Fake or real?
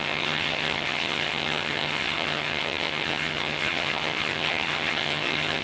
fake